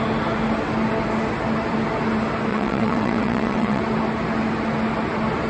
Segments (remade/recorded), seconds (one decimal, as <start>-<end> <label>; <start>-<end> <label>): 0.0-2.5 recorded; 2.5-3.8 remade; 3.8-5.5 recorded